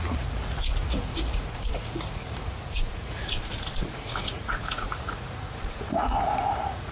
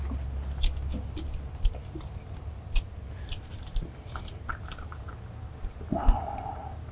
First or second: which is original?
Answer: second